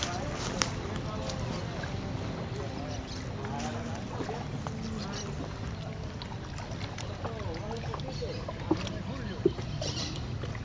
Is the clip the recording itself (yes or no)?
yes